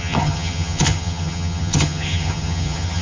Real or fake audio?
fake